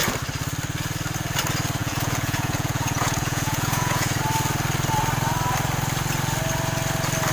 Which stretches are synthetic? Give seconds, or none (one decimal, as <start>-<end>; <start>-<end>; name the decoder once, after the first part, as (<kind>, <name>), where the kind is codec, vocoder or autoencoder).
1.8-4.2 (vocoder, Vocos)